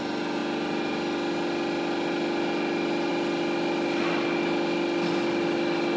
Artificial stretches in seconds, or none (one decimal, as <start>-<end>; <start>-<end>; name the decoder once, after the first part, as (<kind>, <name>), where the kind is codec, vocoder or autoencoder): none